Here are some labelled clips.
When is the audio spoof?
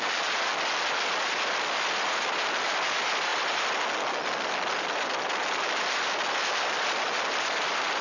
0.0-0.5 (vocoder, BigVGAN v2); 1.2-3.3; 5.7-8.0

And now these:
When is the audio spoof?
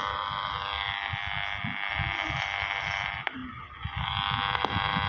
0.0-1.2 (vocoder, BigVGAN v2); 1.9-3.4; 4.6-5.1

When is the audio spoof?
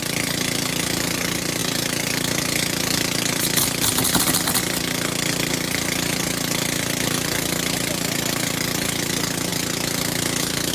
none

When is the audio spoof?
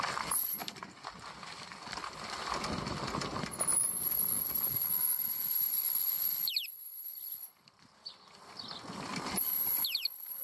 0.0-3.7 (vocoder, BigVGAN v2); 6.5-10.4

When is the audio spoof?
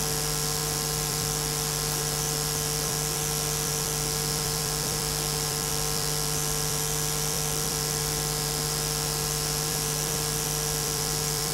0.0-11.5 (vocoder, BigVGAN v2)